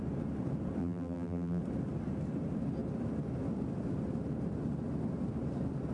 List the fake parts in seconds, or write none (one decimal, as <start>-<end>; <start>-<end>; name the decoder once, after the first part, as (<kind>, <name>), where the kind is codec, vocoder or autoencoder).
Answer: 0.8-1.6 (vocoder, BigVGAN v2)